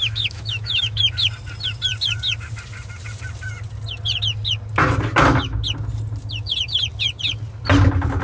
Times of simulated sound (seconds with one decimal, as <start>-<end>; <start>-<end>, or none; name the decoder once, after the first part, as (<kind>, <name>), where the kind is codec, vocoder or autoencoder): 0.0-1.0 (autoencoder, DAC-VAE)